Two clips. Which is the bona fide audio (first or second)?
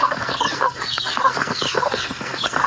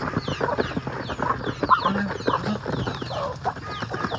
second